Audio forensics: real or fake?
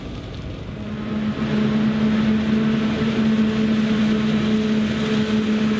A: real